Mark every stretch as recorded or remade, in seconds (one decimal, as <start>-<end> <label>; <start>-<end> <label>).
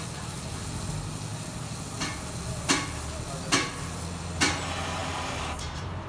0.0-6.1 recorded